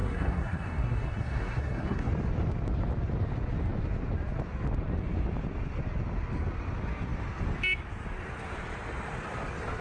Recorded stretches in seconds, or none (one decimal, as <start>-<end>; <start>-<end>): 2.1-9.8